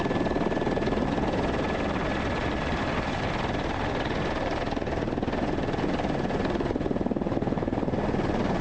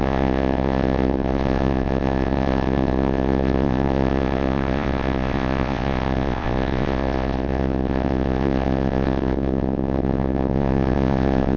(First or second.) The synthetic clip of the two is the second